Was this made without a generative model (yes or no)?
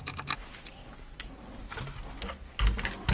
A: yes